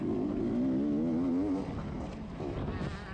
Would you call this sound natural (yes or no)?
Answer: yes